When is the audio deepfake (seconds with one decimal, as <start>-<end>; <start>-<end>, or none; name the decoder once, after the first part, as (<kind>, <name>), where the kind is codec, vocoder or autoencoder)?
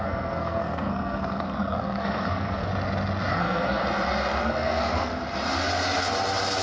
0.0-2.7 (codec, SNAC); 3.3-3.8; 4.4-5.1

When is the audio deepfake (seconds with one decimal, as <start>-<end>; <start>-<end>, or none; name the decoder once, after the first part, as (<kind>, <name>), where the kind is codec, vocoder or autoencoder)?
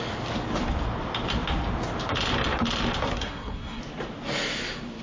3.1-3.8 (codec, SNAC)